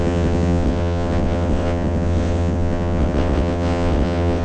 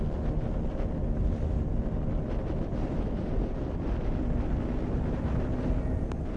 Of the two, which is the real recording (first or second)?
second